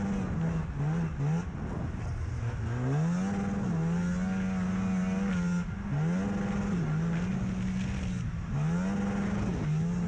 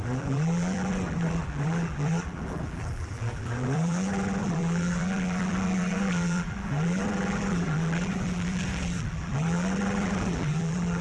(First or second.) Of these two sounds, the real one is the first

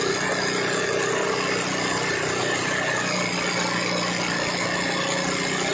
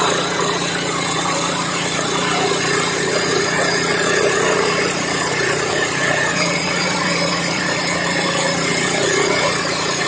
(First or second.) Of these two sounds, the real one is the first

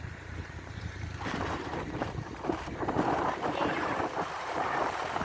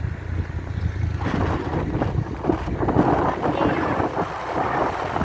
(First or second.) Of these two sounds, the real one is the second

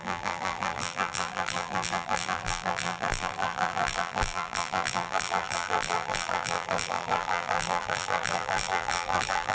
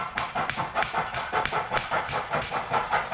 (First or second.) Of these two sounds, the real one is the second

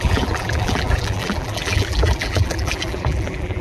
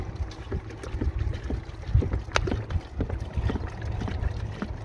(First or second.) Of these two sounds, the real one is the second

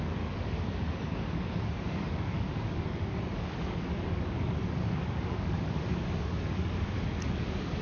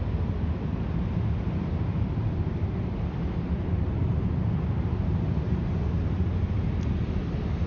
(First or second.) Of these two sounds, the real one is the second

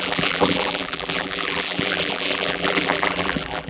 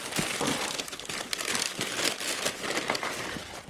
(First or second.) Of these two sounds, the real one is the second